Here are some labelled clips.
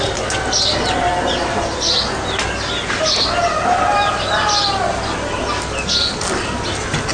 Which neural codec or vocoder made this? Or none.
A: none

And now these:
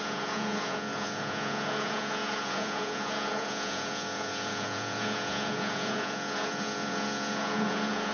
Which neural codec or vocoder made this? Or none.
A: vocoder, Vocos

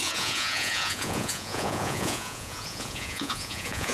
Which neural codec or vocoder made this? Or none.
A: vocoder, Vocos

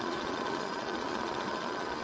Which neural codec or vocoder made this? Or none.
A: vocoder, Vocos